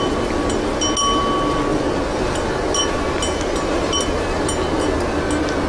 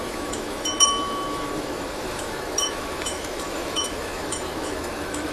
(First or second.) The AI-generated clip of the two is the second